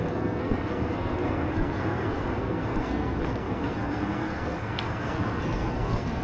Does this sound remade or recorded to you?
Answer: remade